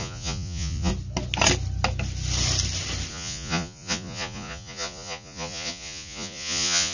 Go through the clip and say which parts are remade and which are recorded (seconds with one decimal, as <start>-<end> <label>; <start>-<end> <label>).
0.0-0.9 remade; 0.9-3.1 recorded; 3.1-6.9 remade